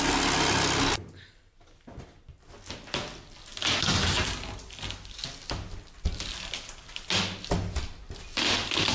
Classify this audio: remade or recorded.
recorded